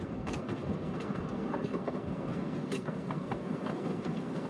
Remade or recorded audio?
remade